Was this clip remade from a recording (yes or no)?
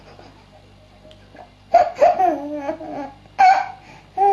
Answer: no